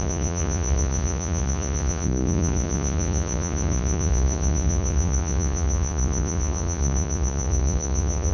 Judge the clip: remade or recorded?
remade